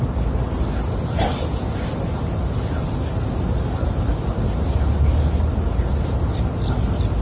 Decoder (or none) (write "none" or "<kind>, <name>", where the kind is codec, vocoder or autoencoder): none